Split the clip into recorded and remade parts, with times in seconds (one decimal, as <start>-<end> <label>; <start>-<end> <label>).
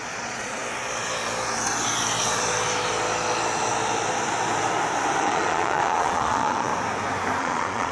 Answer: 0.0-0.6 remade; 0.6-5.2 recorded; 5.2-6.7 remade; 6.7-7.4 recorded; 7.4-7.9 remade